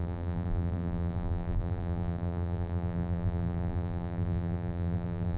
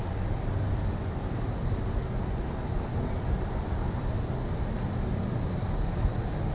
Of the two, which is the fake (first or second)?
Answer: first